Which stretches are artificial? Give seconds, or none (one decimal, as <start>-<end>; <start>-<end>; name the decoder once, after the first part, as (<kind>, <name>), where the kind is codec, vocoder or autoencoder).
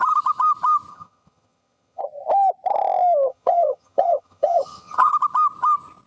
0.9-2.0 (vocoder, HiFi-GAN); 3.3-5.1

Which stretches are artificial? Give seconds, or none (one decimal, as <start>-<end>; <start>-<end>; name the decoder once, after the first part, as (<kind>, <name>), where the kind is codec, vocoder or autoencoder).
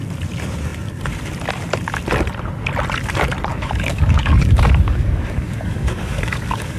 3.5-6.8 (codec, DAC)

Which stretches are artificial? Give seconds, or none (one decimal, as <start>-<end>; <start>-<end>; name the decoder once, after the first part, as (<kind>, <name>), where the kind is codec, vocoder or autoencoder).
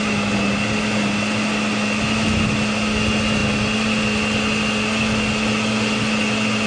none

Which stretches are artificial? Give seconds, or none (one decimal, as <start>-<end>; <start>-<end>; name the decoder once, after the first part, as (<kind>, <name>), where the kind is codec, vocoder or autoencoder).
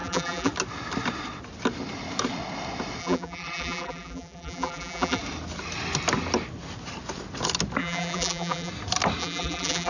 0.0-0.5 (vocoder, BigVGAN v2); 3.0-5.2; 7.8-8.7; 9.2-9.9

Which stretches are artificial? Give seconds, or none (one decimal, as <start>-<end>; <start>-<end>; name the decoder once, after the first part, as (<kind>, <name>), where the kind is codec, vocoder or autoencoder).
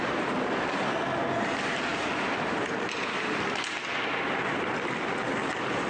none